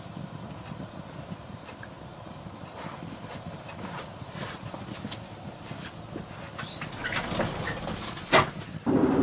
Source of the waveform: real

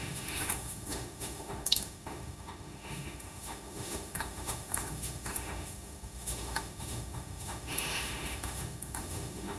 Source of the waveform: fake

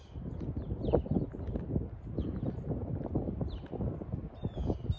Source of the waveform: real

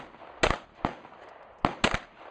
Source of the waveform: real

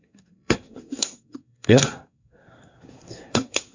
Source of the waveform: fake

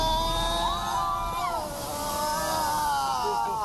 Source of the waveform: real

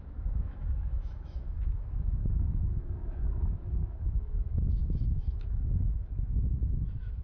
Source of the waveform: fake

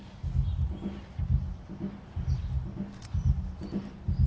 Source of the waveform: real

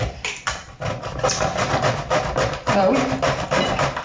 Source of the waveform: fake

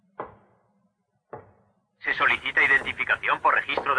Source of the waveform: real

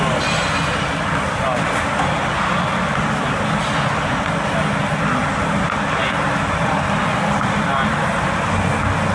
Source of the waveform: real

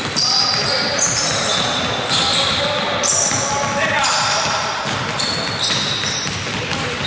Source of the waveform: fake